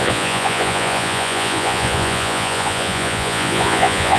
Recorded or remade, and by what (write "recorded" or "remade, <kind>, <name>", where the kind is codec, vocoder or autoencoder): remade, vocoder, Vocos